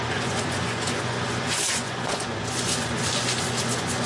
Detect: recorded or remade remade